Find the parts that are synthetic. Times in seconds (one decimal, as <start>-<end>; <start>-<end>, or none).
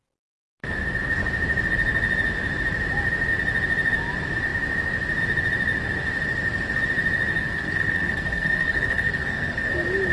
7.4-9.7